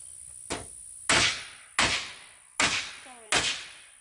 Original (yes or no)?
yes